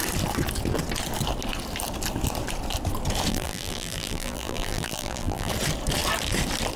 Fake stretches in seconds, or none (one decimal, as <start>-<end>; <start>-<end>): 3.3-5.5